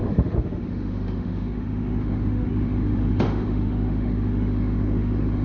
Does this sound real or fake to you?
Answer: fake